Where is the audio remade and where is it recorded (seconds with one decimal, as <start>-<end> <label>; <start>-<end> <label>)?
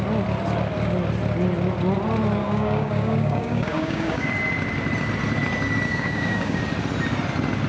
0.0-2.4 recorded; 2.4-4.3 remade; 4.3-5.9 recorded; 5.9-6.6 remade; 6.6-7.7 recorded